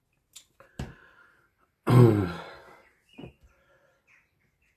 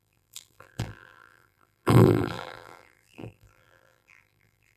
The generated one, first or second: second